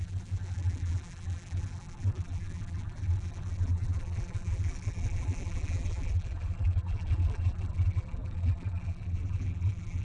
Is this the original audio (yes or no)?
no